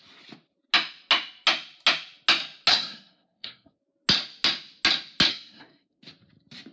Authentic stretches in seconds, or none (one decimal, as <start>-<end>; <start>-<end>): 0.0-2.7; 3.8-5.3; 6.0-6.7

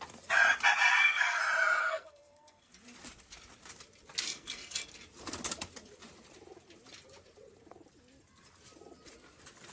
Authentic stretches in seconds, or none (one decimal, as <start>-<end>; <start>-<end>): 0.0-0.9; 1.4-1.8; 2.7-4.3; 4.9-9.7

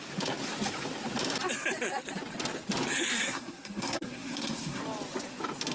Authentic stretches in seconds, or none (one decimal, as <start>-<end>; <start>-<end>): 0.0-3.1; 4.8-5.7